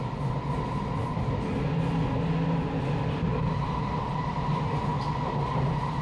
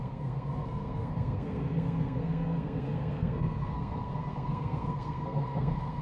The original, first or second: first